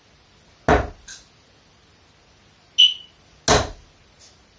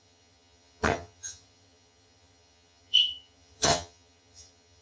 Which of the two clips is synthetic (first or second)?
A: second